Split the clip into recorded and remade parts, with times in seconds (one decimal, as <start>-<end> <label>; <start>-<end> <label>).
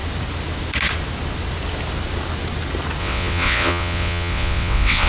0.0-3.0 recorded; 3.0-5.1 remade